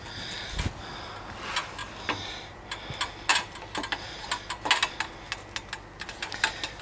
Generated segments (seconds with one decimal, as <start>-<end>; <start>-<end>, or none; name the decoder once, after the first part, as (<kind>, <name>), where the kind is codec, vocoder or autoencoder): none